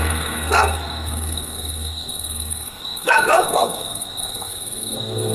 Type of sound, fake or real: fake